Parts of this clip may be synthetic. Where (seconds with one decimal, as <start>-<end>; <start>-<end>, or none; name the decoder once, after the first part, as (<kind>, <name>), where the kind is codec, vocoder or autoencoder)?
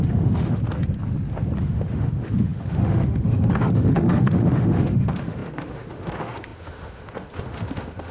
0.0-0.6 (autoencoder, DAC-VAE); 1.6-8.1